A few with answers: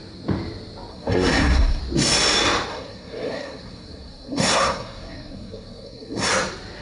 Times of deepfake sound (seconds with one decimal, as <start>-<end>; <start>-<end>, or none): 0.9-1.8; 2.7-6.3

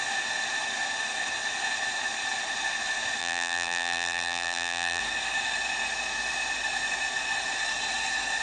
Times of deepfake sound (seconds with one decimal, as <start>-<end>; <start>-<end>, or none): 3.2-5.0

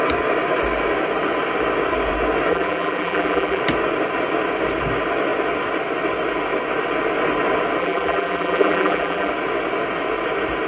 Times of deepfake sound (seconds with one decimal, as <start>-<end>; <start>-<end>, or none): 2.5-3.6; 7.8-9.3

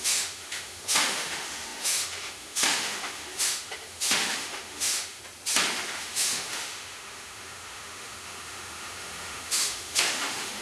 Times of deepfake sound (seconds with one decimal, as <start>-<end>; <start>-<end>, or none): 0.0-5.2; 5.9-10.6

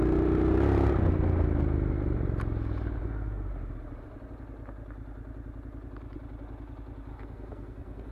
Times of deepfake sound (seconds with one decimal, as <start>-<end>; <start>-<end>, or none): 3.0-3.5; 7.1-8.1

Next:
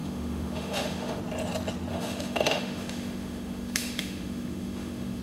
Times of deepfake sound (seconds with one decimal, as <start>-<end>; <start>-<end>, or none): 0.0-1.2; 1.9-5.2